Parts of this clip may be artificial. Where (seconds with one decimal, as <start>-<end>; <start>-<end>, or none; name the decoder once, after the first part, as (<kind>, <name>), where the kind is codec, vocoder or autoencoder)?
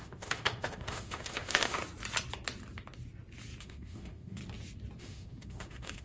0.0-1.8 (autoencoder, DAC-VAE); 3.6-4.4; 5.0-6.0